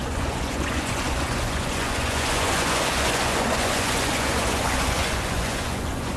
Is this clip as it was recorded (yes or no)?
no